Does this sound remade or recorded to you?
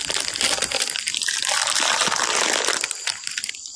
recorded